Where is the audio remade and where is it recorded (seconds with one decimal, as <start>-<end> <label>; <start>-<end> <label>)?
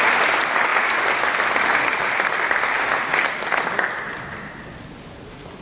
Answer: 0.0-5.6 recorded